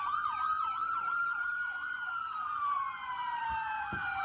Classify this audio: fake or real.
fake